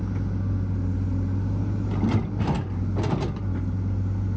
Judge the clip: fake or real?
real